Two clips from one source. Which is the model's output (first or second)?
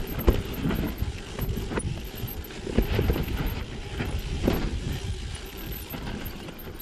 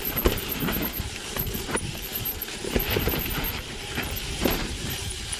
second